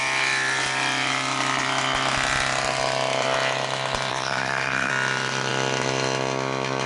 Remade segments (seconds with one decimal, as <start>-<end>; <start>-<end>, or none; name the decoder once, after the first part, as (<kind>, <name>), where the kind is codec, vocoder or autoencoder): 4.1-4.9 (codec, SNAC)